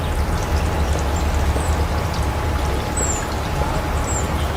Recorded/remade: recorded